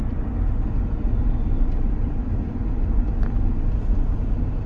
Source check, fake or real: real